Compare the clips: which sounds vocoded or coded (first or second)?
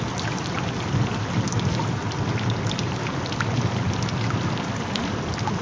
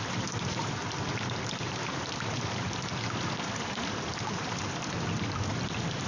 second